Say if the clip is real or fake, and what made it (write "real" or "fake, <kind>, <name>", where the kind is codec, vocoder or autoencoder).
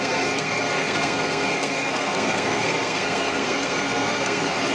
fake, codec, SNAC